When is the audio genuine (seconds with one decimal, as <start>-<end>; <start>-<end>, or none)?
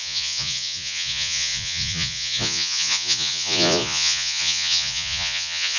none